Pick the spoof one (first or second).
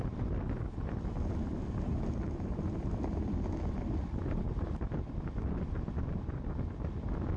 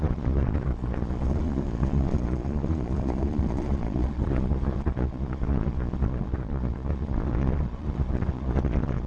second